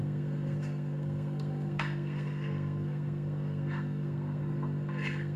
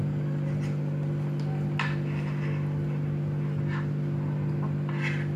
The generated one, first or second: first